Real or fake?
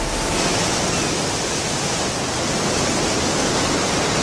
real